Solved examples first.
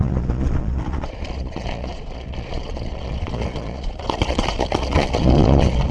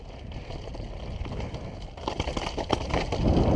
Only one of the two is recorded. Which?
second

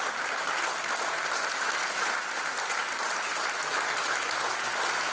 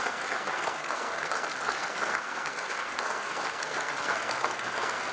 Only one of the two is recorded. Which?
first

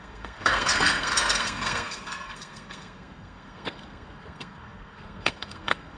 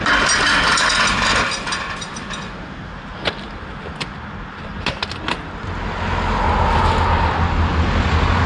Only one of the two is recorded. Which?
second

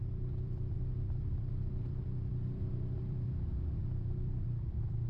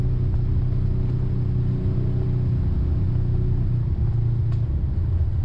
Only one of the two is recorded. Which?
second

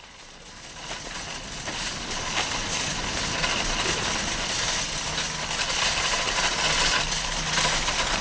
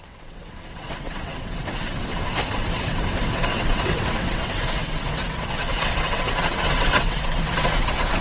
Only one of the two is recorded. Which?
first